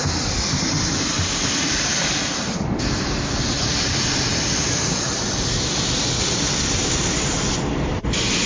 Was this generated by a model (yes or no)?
no